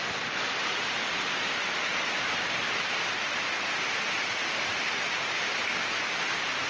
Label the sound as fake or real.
real